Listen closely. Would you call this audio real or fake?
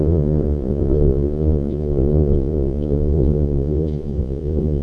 fake